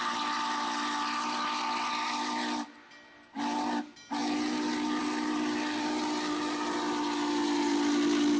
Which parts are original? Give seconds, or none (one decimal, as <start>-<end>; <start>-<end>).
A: 0.0-8.4